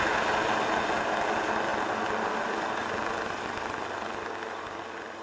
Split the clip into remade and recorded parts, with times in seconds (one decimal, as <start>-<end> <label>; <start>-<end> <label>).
0.0-5.2 recorded